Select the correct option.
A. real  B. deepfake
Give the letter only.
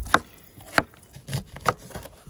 A